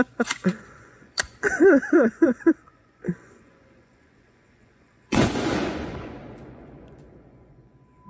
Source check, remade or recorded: remade